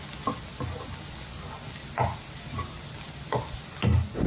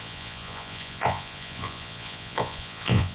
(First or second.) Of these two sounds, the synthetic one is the second